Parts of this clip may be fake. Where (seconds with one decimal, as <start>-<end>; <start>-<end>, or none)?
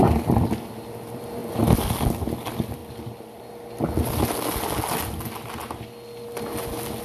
0.0-1.4; 2.4-2.8